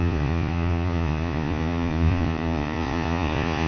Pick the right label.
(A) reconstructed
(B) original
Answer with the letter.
A